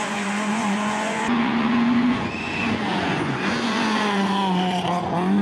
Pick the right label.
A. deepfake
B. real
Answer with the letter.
A